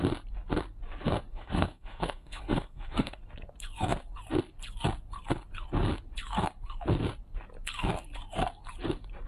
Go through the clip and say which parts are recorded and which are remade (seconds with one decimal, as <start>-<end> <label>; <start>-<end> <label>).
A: 0.0-1.3 recorded; 1.3-3.2 remade; 3.2-9.3 recorded